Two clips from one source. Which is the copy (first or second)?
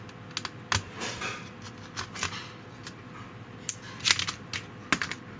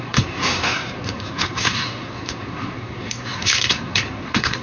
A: second